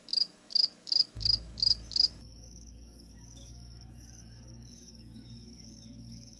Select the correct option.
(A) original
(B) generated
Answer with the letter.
B